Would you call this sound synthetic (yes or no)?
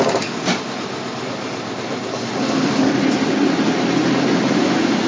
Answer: no